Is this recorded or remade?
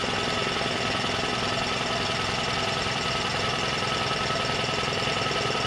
recorded